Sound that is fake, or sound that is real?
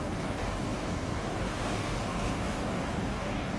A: fake